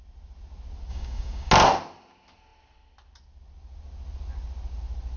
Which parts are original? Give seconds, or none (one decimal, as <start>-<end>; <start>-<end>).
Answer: 0.0-0.9; 1.5-5.2